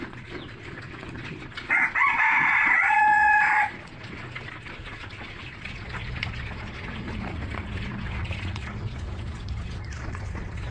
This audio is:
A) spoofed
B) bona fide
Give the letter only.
A